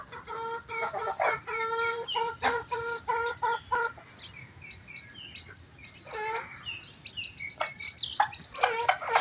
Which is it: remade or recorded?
recorded